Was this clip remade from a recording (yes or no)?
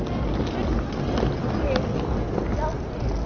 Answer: no